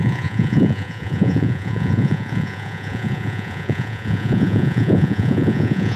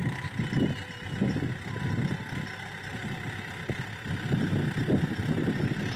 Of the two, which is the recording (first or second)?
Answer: second